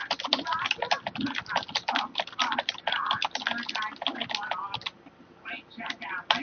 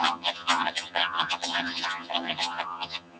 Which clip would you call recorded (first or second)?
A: first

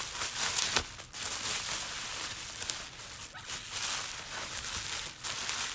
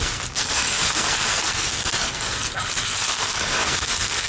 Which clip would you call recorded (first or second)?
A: first